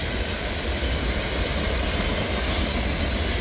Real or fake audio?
real